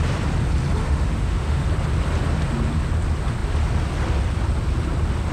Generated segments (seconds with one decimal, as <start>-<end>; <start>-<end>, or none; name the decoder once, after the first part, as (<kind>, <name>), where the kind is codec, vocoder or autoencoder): 0.8-1.6 (autoencoder, DAC-VAE)

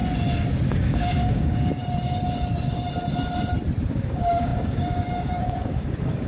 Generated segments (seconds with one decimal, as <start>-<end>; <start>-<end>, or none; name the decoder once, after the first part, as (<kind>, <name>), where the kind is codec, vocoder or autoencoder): 0.7-1.8 (codec, DAC); 3.9-6.3

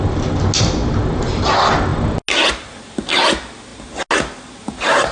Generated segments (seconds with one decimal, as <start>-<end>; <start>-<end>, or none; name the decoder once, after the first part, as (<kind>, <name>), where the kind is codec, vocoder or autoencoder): none

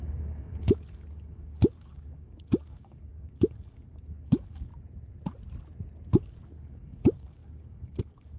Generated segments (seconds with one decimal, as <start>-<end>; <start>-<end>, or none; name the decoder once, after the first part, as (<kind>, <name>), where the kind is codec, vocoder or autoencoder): 0.0-4.7 (codec, DAC); 6.1-8.4

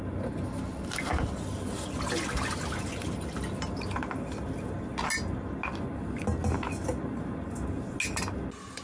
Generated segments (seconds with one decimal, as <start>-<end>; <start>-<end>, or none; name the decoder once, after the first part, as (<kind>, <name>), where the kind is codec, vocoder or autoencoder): none